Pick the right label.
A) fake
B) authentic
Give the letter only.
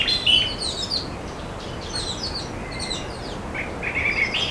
B